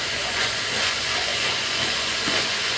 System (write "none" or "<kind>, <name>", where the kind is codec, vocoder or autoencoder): vocoder, Vocos